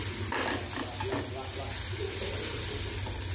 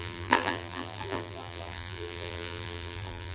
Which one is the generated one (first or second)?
second